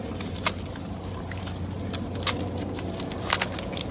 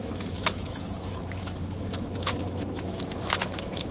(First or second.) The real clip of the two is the first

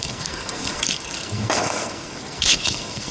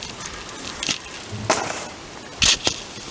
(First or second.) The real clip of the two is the second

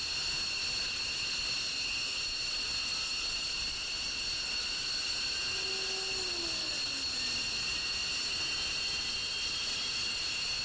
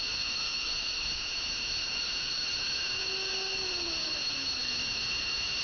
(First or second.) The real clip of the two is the first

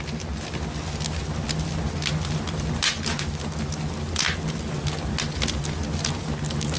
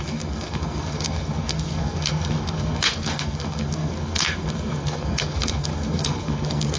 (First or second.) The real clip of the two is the first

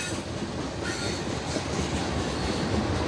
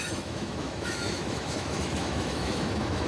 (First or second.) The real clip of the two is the first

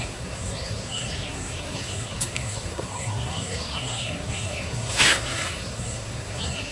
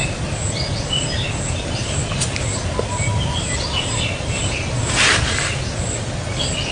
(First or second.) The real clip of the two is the second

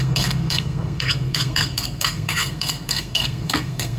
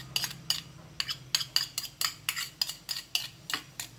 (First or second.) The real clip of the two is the second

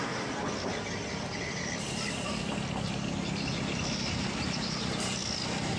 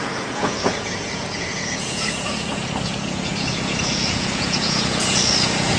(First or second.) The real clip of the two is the first